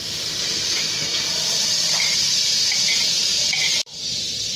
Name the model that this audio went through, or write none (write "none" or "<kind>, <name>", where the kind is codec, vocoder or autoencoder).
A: vocoder, BigVGAN v2